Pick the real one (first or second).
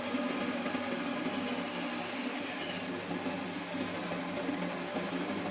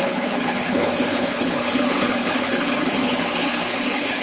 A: first